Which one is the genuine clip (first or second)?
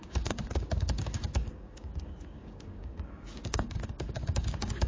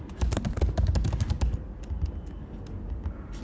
second